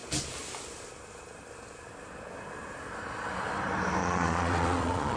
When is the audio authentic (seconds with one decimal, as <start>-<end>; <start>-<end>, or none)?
0.0-4.0